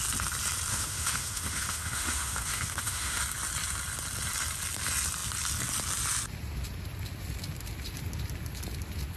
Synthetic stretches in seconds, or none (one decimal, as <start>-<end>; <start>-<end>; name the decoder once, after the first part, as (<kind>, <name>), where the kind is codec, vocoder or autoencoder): 0.7-3.2 (autoencoder, DAC-VAE)